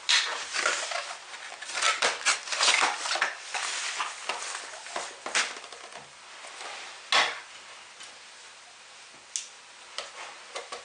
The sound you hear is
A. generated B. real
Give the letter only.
B